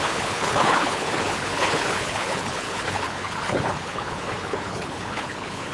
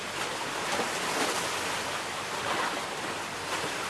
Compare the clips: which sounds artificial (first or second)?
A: first